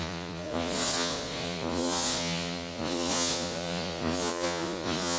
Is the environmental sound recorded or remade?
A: remade